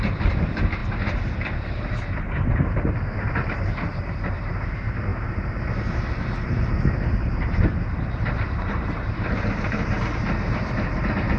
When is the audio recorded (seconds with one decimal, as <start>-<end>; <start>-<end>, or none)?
none